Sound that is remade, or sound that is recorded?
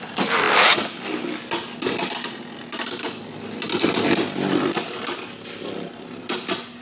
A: recorded